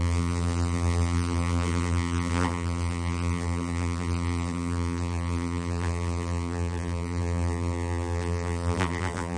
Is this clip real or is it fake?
fake